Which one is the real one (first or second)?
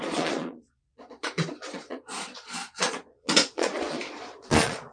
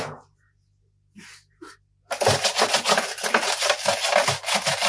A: second